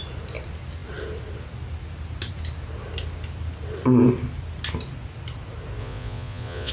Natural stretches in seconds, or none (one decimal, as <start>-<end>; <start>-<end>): 0.0-5.8